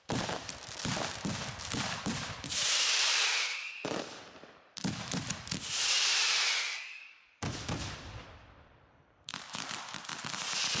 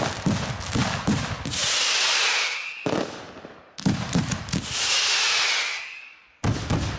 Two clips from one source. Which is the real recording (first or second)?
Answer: second